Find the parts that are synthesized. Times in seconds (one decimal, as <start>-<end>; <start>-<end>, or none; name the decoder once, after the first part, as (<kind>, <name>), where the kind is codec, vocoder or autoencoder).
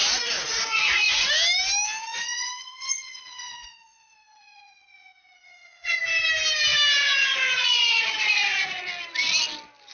0.0-1.3 (vocoder, Vocos); 2.0-6.0; 7.0-8.9